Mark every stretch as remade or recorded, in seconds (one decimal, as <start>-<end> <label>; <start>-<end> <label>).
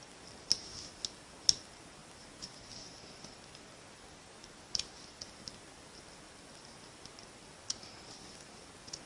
0.0-9.1 recorded